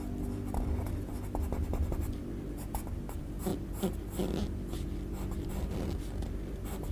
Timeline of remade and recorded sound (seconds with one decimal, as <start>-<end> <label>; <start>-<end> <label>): 0.0-6.9 recorded